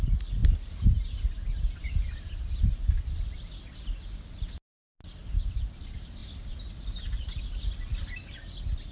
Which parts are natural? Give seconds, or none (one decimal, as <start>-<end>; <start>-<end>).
0.0-5.2; 5.8-6.2; 7.4-8.9